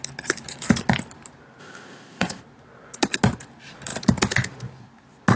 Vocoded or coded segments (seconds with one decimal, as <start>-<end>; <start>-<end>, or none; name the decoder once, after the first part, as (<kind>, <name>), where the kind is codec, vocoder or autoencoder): 1.6-2.4 (codec, ZipCodec)